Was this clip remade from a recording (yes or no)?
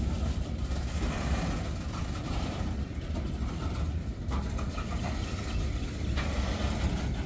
no